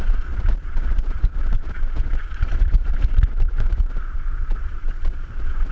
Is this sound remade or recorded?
remade